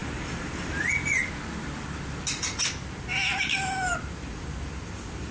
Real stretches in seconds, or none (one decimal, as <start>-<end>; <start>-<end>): 0.0-5.3